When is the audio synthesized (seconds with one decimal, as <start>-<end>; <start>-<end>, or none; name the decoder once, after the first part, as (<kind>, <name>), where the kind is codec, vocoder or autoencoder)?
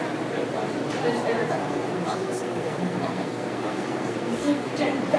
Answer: 1.6-4.7 (codec, SNAC)